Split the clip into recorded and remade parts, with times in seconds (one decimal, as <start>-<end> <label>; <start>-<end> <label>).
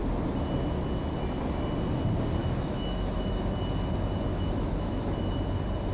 0.0-2.4 recorded; 2.4-3.6 remade; 3.6-4.3 recorded; 4.3-5.3 remade; 5.3-5.9 recorded